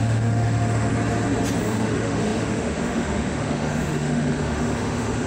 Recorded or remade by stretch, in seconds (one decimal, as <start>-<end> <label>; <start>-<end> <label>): 0.0-0.9 remade; 0.9-1.6 recorded; 1.6-5.3 remade